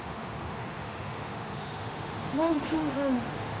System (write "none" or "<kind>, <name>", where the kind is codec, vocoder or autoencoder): autoencoder, DAC-VAE